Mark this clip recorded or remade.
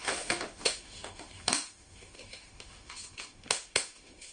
remade